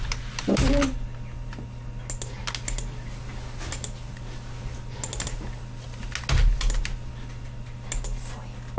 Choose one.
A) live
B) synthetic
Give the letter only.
A